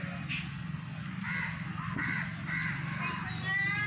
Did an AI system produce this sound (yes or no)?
no